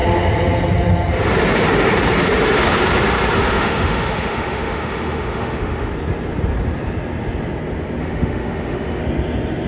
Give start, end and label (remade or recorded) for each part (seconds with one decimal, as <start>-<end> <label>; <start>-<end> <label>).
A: 0.0-3.4 recorded; 3.4-5.9 remade; 5.9-8.0 recorded; 8.0-9.0 remade; 9.0-9.7 recorded